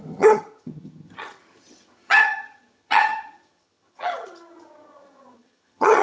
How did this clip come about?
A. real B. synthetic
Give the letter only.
B